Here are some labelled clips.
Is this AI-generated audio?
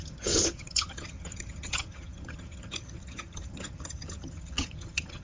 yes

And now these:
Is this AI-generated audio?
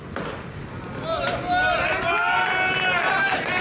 no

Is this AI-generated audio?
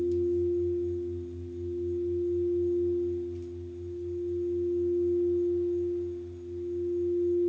no